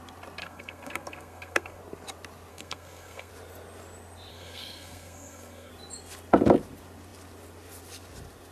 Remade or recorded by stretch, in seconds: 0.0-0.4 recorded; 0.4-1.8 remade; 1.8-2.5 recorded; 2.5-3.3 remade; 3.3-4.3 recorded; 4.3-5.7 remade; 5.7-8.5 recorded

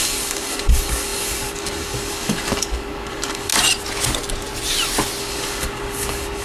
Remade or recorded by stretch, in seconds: 0.0-3.5 remade; 3.5-5.2 recorded; 5.2-6.4 remade

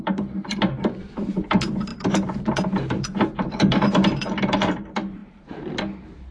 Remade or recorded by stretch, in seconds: 0.0-6.3 remade

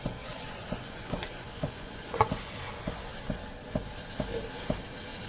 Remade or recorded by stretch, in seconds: 0.0-3.1 remade; 3.1-5.3 recorded

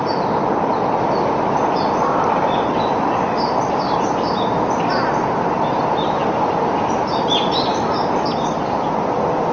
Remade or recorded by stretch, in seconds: 0.0-9.5 recorded

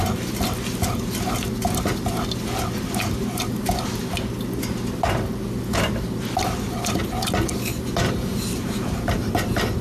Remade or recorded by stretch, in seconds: 0.0-3.2 recorded; 3.2-4.1 remade; 4.1-7.7 recorded; 7.7-9.8 remade

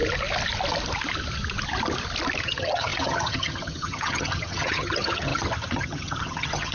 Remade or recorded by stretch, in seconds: 0.0-2.4 recorded; 2.4-6.7 remade

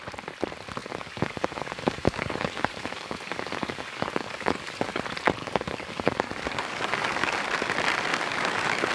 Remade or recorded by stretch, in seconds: 0.0-0.8 recorded; 0.8-5.0 remade; 5.0-5.4 recorded; 5.4-7.3 remade; 7.3-8.1 recorded; 8.1-8.9 remade